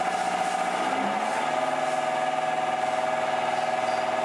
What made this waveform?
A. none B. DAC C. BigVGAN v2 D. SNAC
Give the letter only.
A